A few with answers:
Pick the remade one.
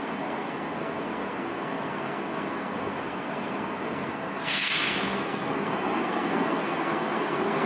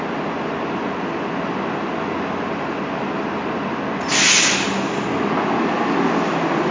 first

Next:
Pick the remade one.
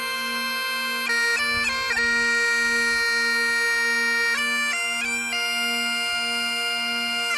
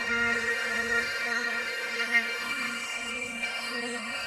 second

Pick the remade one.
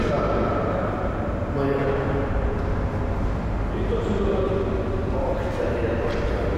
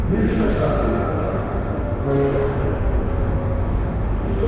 second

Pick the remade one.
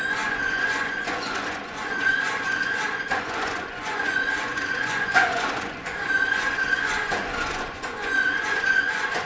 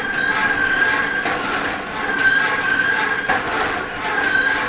first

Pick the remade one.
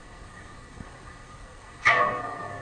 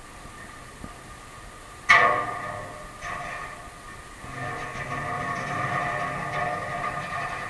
first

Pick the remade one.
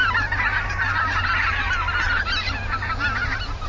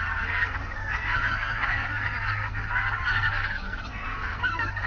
second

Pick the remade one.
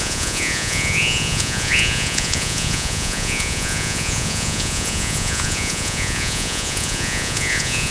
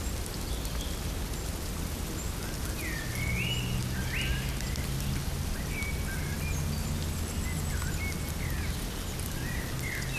first